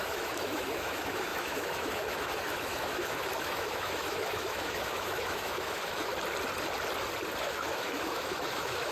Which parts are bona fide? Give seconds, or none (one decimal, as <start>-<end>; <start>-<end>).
6.1-7.4